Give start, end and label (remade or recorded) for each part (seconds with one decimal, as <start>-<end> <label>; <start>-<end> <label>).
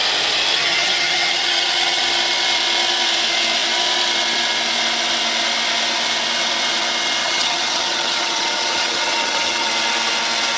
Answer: 0.0-0.5 recorded; 0.5-2.0 remade; 2.0-7.2 recorded; 7.2-9.7 remade; 9.7-10.6 recorded